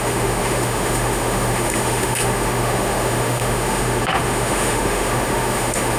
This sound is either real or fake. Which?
fake